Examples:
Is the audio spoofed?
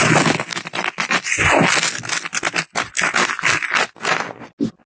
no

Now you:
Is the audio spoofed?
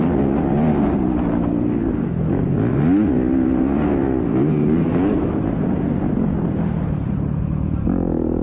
no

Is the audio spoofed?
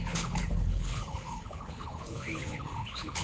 yes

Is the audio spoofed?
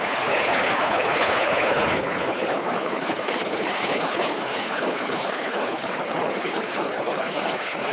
yes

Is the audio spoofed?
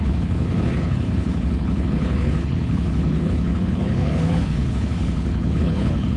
yes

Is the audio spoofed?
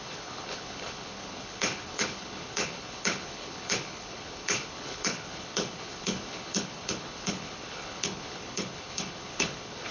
yes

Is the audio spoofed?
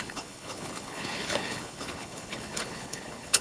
yes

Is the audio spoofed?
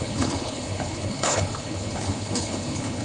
yes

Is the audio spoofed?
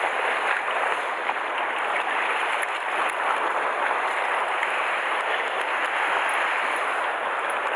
no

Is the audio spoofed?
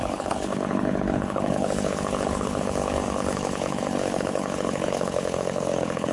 yes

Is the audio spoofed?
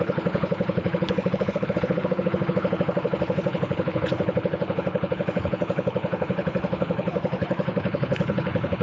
yes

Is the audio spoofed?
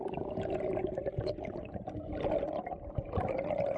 no